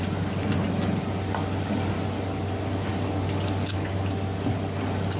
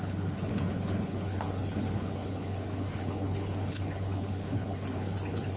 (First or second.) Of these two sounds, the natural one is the first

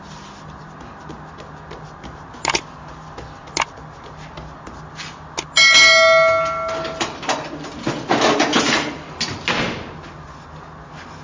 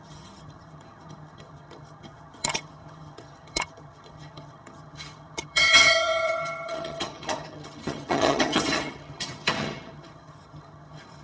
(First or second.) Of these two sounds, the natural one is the first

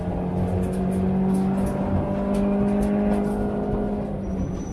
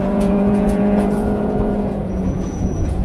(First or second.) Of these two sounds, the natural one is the first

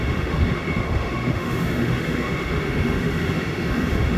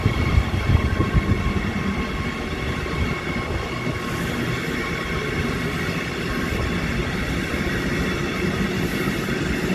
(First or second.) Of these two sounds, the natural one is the second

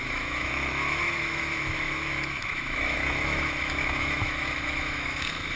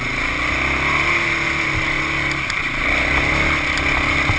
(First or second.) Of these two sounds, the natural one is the second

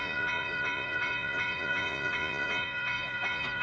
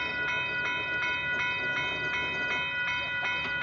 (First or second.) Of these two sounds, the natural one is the second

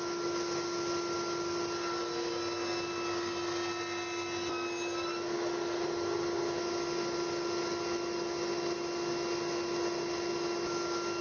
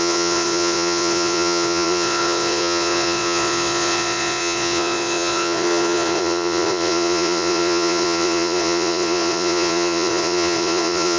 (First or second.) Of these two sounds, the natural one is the first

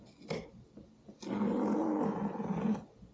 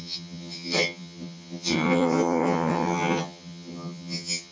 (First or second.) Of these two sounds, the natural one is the first